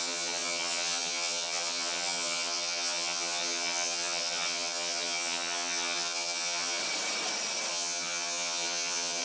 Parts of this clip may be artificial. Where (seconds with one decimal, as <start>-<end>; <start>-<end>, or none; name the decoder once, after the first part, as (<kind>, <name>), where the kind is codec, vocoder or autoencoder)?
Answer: 0.0-6.8 (vocoder, HiFi-GAN); 7.7-9.2